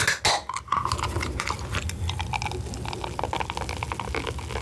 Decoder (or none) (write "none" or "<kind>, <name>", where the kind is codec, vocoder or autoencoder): none